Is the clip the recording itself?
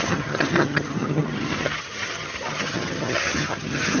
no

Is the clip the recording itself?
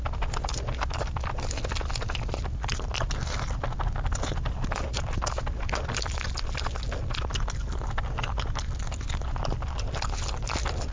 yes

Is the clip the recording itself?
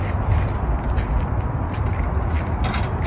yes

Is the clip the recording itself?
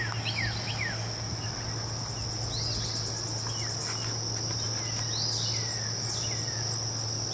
yes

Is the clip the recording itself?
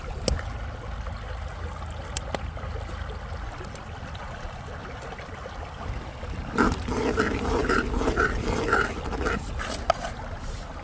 yes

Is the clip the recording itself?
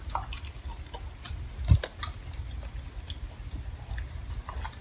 yes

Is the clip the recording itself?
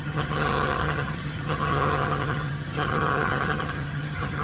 no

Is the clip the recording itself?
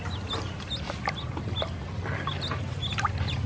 yes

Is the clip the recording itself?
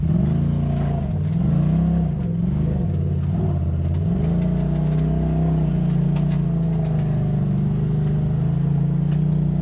yes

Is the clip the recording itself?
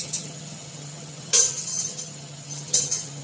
no